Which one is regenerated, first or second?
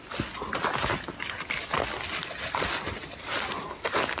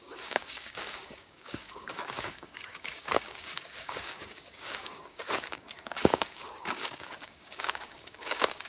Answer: second